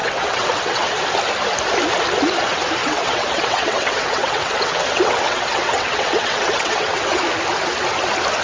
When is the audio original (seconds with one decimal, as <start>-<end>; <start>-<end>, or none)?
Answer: 0.9-2.8; 7.2-8.4